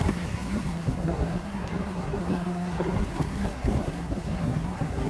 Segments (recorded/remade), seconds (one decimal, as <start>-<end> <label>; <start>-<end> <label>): 0.0-5.1 remade